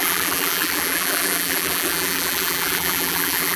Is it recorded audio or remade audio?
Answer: remade